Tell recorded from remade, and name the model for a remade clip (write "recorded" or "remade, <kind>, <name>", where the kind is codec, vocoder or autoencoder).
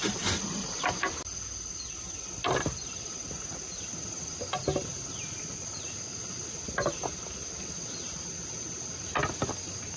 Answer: recorded